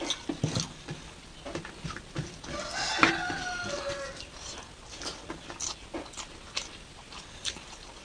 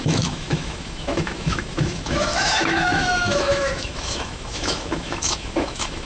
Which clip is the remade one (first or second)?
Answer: second